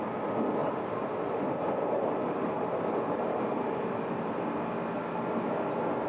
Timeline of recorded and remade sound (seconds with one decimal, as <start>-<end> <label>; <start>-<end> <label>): 0.0-0.6 recorded; 0.6-4.3 remade; 4.3-6.1 recorded